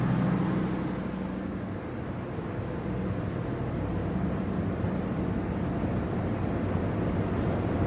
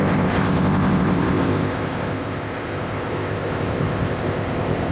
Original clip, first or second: first